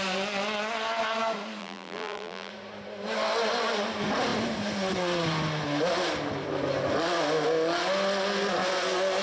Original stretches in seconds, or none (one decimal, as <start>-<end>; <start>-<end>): 0.0-1.6; 2.5-9.2